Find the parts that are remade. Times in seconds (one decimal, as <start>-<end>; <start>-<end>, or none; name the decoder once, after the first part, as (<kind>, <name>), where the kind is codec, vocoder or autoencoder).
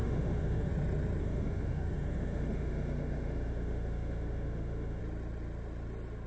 0.0-0.7 (autoencoder, DAC-VAE); 1.2-5.0